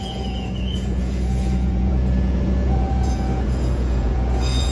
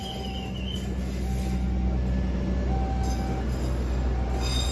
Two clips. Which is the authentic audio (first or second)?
second